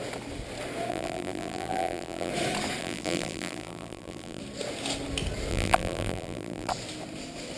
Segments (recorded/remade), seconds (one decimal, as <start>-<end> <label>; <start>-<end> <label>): 0.0-0.9 recorded; 0.9-2.3 remade; 2.3-2.8 recorded; 2.8-4.4 remade; 4.4-5.5 recorded; 5.5-6.7 remade; 6.7-7.6 recorded